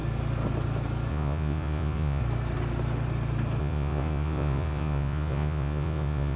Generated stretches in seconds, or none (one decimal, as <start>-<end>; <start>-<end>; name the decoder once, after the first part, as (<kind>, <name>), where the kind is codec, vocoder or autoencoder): 1.1-2.2 (vocoder, Vocos); 3.6-6.4